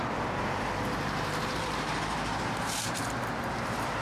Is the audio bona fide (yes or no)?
no